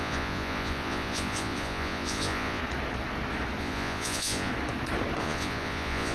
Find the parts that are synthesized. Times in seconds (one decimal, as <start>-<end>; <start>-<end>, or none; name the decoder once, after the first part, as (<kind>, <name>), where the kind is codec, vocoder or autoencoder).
0.0-2.6 (vocoder, Vocos); 3.6-4.5; 5.2-6.1